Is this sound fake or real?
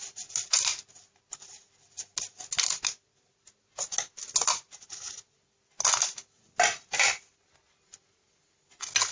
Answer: real